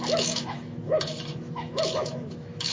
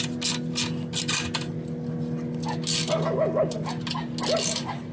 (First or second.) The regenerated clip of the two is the first